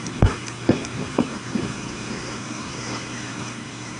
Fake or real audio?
fake